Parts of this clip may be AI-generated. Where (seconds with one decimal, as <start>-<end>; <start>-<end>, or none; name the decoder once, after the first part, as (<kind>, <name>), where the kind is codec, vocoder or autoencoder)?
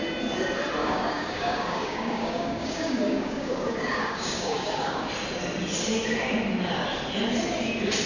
0.8-5.1 (codec, DAC)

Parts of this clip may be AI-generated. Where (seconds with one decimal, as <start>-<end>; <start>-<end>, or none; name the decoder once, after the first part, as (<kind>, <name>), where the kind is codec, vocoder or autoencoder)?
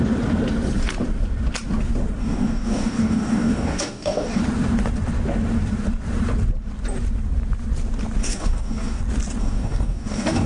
2.2-4.4 (codec, DAC); 8.2-9.0; 9.4-10.5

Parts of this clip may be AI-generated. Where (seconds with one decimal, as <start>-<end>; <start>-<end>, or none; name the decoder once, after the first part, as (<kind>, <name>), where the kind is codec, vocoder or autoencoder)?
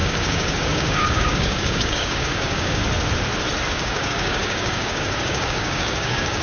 0.0-2.8 (codec, DAC); 3.7-6.4